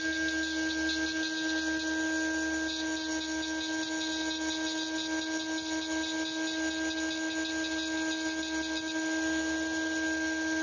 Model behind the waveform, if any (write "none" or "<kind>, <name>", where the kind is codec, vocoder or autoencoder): none